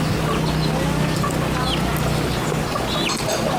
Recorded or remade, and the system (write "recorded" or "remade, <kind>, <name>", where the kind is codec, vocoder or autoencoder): recorded